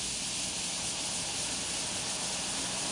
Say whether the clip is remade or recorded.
recorded